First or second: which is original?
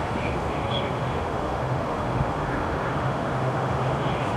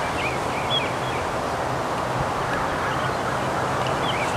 second